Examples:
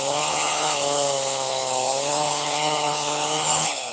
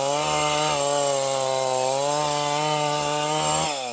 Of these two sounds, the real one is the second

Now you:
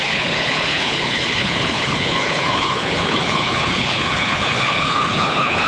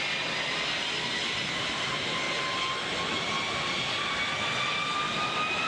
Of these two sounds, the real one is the second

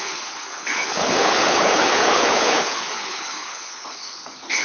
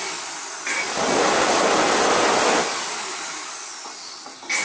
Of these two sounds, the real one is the second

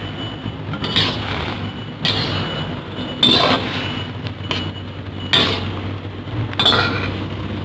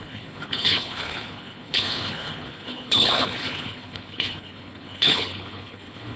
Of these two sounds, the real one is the first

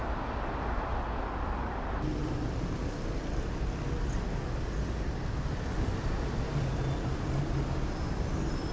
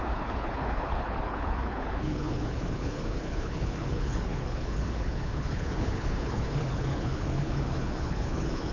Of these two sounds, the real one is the first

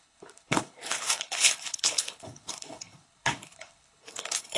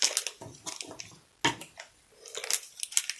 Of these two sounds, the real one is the second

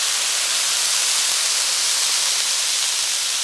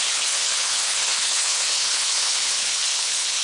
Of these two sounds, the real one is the first